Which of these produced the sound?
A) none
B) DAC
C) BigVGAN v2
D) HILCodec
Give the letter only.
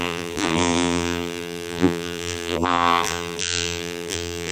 C